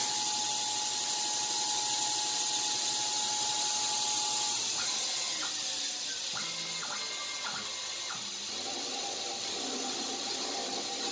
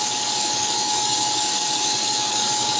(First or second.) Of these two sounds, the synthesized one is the second